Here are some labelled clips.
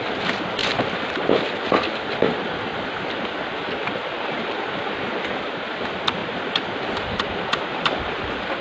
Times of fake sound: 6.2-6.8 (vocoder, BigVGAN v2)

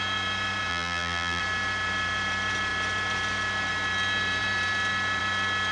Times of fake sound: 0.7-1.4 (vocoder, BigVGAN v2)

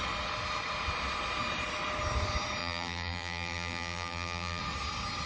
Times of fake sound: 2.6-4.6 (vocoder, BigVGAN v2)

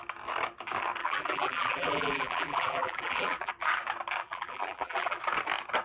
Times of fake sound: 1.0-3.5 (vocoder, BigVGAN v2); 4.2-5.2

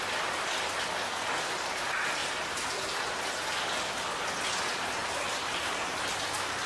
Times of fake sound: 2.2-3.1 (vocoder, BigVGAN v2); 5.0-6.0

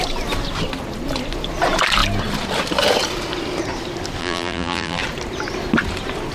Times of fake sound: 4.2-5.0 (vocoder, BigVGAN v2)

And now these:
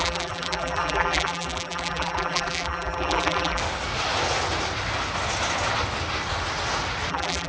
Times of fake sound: 0.0-3.6 (vocoder, BigVGAN v2); 7.1-7.5

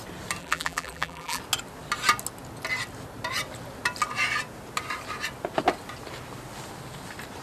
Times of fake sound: 0.4-1.4 (vocoder, BigVGAN v2)